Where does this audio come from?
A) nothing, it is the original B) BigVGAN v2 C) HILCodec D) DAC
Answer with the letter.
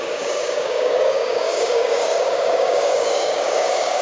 D